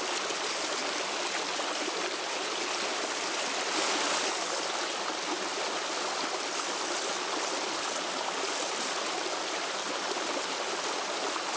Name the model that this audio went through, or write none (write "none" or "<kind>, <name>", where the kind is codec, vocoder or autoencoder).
none